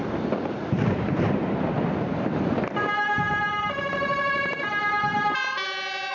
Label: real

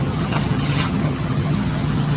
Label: fake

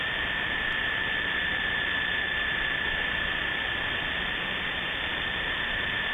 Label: fake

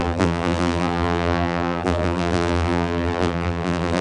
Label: fake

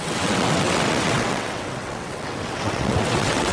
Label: fake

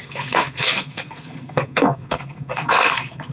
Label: fake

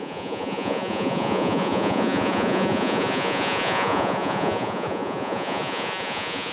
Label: fake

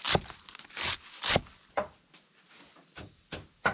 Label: real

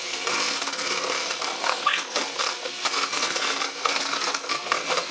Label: fake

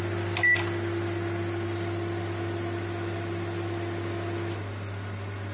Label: real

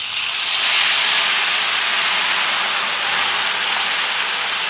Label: real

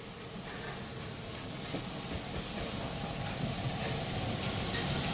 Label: real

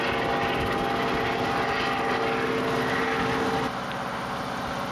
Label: real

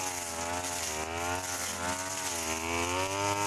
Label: real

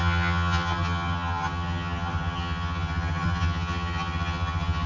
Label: fake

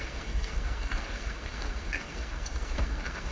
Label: fake